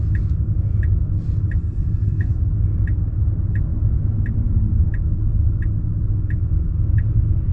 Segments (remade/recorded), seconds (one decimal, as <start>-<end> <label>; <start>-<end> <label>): 0.0-1.6 recorded; 1.6-2.3 remade; 2.3-7.5 recorded